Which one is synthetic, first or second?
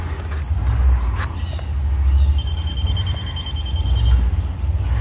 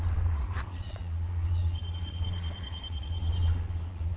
second